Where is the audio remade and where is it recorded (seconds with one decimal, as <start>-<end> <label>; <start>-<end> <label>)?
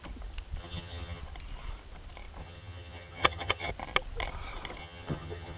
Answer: 0.0-0.6 recorded; 0.6-1.2 remade; 1.2-2.4 recorded; 2.4-3.7 remade; 3.7-4.8 recorded; 4.8-5.6 remade